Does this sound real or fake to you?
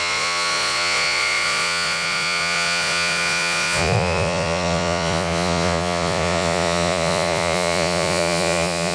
fake